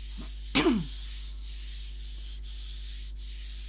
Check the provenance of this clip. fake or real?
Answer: real